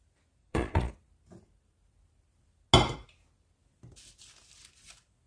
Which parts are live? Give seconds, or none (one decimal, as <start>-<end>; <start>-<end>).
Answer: 0.0-0.4; 0.9-5.3